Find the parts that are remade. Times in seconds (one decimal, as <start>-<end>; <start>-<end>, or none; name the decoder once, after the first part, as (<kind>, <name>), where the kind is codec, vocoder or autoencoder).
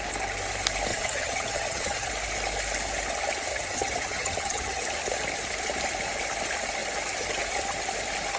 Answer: 0.9-2.1 (vocoder, HiFi-GAN); 3.5-4.8